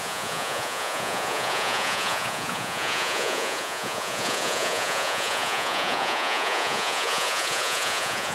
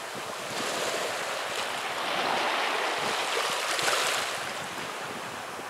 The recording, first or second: second